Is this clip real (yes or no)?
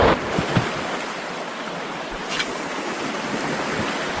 yes